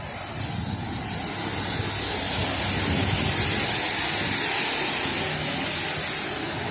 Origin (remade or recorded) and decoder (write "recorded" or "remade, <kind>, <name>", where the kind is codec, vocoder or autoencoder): recorded